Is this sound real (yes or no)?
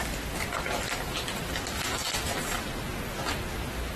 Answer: yes